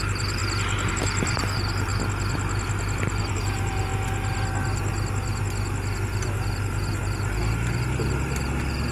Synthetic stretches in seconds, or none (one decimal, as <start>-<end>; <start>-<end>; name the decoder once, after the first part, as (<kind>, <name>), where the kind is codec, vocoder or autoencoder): 0.0-0.4 (vocoder, BigVGAN v2); 0.9-1.9; 3.3-3.9; 8.0-8.9